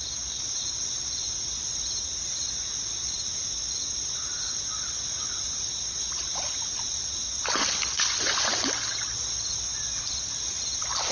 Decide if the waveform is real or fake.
real